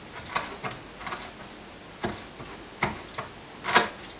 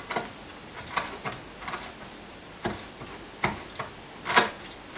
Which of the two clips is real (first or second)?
first